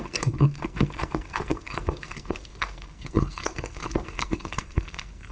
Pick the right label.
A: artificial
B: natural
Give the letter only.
A